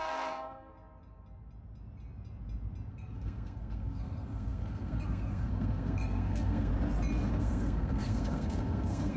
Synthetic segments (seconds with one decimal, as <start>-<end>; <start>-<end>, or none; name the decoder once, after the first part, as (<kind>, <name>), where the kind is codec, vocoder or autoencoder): 0.0-0.7 (codec, SNAC); 2.9-6.7; 7.3-9.2